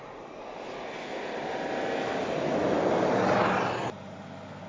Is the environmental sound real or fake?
real